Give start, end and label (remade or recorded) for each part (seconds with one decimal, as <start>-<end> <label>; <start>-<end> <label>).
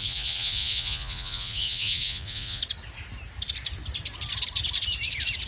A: 0.0-2.6 remade; 2.6-5.5 recorded